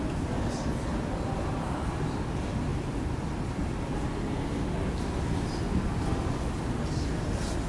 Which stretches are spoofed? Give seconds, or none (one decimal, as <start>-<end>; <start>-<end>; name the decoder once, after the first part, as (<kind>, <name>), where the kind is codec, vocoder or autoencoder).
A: none